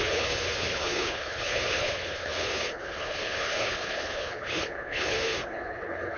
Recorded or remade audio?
remade